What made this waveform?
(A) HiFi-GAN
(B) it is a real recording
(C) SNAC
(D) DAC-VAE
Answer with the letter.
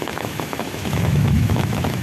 D